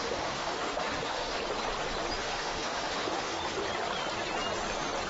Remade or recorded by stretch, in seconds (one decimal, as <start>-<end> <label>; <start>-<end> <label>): 0.0-1.4 remade; 1.4-2.2 recorded; 2.2-3.4 remade; 3.4-5.1 recorded